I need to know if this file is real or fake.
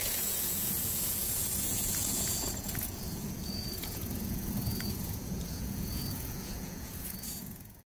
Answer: fake